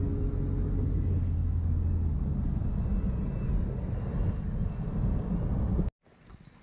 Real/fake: real